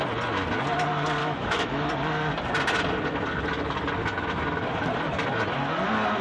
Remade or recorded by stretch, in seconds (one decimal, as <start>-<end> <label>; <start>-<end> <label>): 0.0-1.2 recorded; 1.2-1.9 remade; 1.9-6.2 recorded